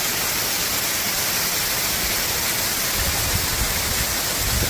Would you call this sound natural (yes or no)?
yes